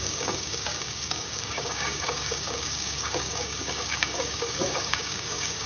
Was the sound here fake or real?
fake